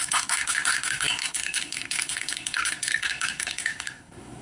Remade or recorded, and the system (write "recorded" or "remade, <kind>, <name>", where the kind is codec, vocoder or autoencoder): remade, codec, SNAC